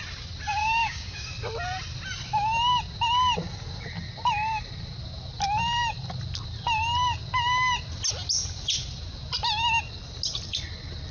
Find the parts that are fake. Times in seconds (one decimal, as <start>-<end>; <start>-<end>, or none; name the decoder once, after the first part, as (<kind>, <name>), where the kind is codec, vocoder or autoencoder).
0.6-1.3 (codec, DAC)